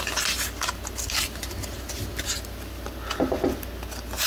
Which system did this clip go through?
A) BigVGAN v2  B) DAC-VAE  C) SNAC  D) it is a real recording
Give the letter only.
D